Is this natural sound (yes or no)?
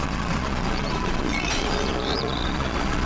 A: no